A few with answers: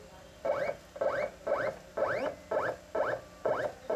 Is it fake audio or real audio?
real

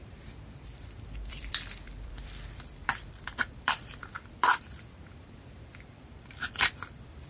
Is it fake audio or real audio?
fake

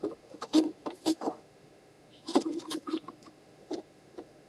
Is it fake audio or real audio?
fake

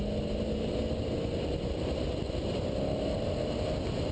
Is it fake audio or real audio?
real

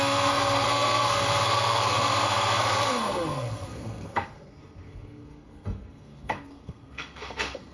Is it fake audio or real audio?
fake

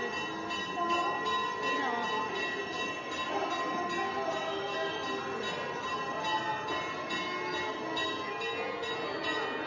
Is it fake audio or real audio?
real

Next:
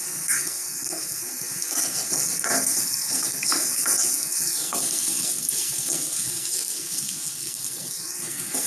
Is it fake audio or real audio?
fake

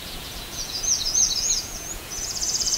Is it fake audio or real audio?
fake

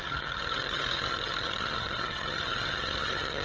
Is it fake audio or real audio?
fake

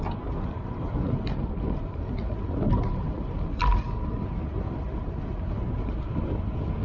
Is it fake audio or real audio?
real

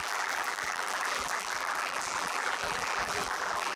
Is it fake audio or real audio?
fake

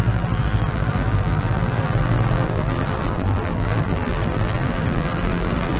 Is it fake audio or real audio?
fake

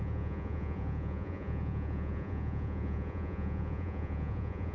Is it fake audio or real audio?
fake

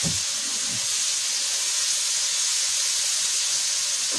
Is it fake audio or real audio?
fake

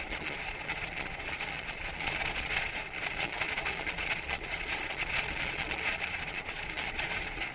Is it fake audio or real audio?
fake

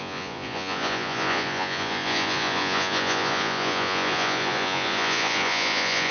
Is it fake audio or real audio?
fake